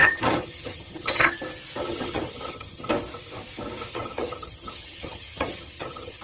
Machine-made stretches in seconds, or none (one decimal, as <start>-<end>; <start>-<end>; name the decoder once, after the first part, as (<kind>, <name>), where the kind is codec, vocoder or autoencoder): 0.0-1.4 (vocoder, HiFi-GAN); 1.8-2.9; 3.9-6.2

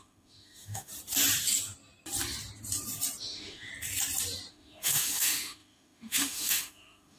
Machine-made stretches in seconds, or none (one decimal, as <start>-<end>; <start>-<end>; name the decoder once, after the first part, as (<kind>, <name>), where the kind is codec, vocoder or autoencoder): 0.0-0.9 (autoencoder, DAC-VAE); 3.2-3.7; 4.5-7.2

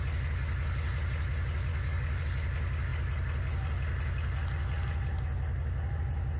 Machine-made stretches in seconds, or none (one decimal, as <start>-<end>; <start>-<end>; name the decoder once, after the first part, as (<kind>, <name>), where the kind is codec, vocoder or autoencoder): 1.7-2.2 (codec, DAC)

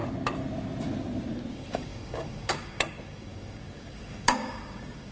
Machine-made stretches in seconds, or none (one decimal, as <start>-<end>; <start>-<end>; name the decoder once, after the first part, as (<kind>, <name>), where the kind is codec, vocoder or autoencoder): 1.5-5.1 (codec, DAC)

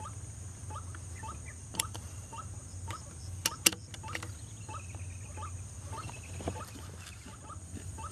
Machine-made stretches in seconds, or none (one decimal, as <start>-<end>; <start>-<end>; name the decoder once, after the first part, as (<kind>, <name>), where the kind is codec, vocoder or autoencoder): 1.6-2.4 (vocoder, BigVGAN v2)